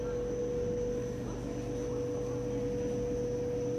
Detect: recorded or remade recorded